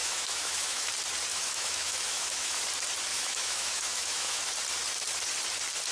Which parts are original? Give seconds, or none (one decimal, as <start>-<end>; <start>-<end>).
0.9-1.3; 2.6-3.1; 4.4-5.9